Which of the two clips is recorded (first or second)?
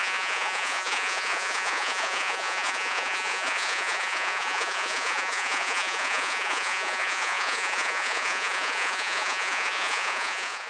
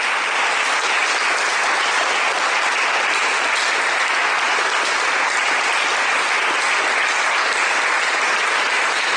second